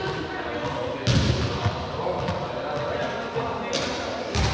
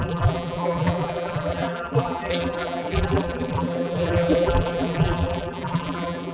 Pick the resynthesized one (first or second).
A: second